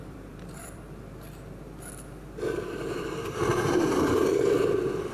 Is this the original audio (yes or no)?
no